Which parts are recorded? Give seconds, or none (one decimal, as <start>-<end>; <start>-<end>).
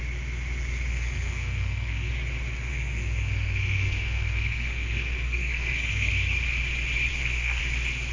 0.0-0.9; 2.1-2.7; 6.1-7.1; 7.6-8.1